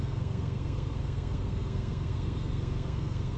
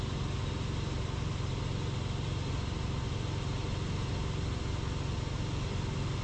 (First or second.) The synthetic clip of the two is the first